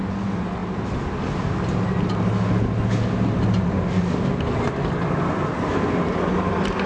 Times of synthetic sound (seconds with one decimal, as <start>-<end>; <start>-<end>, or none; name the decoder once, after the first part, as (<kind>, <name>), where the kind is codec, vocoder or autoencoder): none